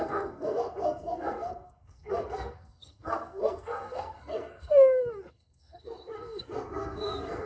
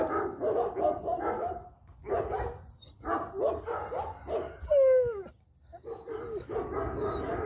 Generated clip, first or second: first